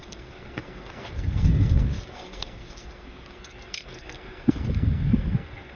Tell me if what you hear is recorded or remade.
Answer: remade